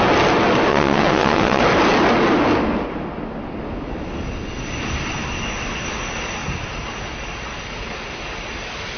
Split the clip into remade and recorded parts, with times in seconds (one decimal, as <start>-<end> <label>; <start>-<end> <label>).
0.0-0.7 recorded; 0.7-1.6 remade; 1.6-9.0 recorded